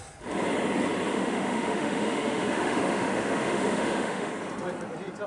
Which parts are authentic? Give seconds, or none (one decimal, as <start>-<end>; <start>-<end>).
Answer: 0.0-1.1; 4.3-5.3